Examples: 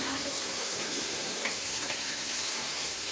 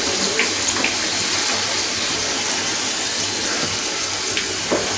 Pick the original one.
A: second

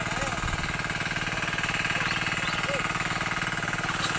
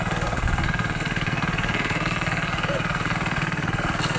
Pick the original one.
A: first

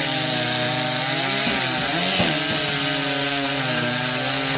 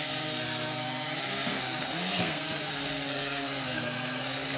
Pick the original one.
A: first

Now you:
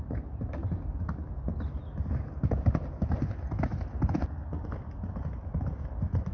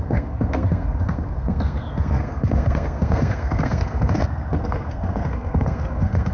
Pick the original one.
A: first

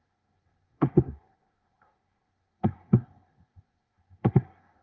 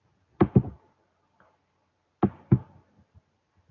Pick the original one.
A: second